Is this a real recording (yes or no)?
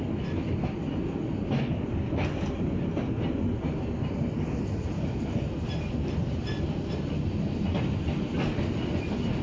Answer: yes